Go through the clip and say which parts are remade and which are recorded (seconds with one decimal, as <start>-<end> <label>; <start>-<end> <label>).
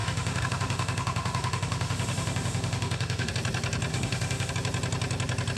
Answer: 0.0-3.3 remade; 3.3-3.9 recorded; 3.9-4.5 remade; 4.5-5.6 recorded